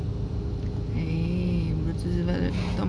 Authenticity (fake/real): real